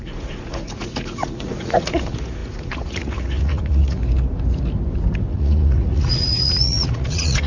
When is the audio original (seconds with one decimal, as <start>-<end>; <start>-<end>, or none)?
4.0-5.3